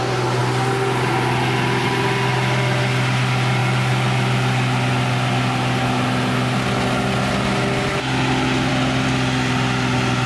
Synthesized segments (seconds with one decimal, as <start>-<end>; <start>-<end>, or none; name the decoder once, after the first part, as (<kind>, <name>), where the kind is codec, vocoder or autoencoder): none